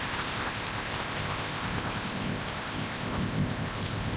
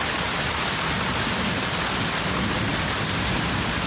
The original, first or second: second